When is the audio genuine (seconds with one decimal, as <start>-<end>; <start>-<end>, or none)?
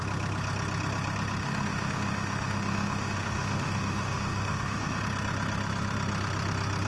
0.0-1.4; 5.0-6.9